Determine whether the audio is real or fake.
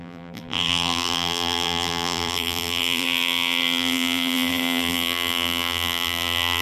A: fake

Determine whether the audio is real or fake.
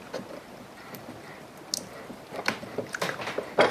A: real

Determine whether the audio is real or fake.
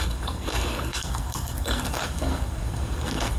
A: fake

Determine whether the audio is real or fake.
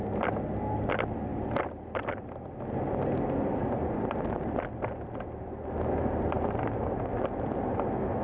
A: real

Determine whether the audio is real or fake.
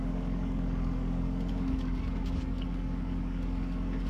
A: fake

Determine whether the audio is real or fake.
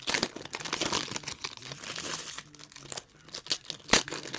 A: real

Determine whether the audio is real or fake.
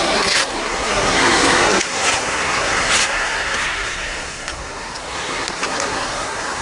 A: fake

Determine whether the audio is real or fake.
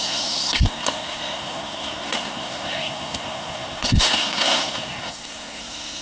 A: fake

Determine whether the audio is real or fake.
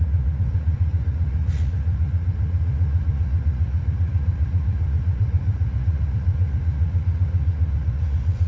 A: fake